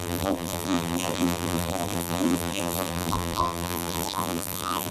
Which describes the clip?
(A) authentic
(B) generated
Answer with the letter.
B